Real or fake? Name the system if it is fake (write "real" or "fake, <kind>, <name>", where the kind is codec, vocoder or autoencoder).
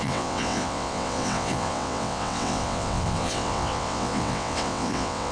fake, vocoder, WaveNeXt